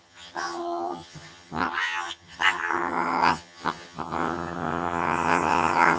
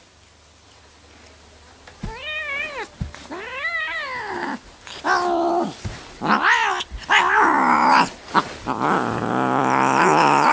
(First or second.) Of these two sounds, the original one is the second